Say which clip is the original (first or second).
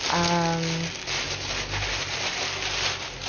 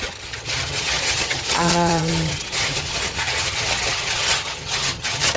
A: first